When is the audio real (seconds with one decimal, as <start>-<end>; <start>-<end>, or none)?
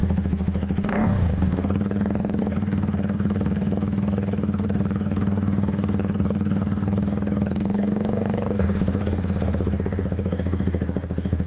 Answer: none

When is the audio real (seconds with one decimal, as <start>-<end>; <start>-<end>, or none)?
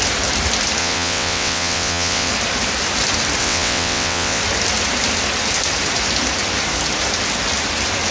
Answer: 0.0-0.8; 2.3-3.4; 4.4-8.1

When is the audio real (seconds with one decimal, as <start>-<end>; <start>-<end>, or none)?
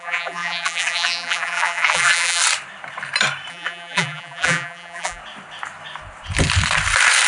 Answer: 2.4-3.5; 5.2-7.3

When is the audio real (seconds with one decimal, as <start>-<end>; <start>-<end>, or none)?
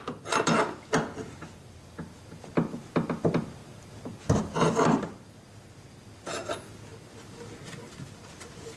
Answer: 0.0-8.8